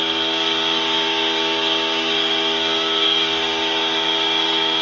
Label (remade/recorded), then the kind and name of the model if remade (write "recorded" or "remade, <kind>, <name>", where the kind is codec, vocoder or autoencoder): remade, codec, DAC